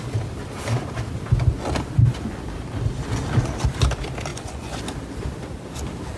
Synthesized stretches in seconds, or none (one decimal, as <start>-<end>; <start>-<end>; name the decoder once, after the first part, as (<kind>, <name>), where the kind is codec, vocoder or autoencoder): 4.3-4.8 (vocoder, Vocos)